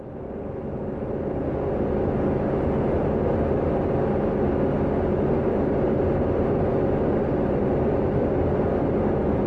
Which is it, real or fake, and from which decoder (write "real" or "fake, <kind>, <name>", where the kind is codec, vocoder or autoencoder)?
real